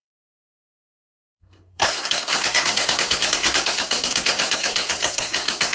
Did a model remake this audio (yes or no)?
yes